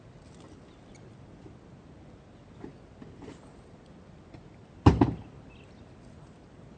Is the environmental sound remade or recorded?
recorded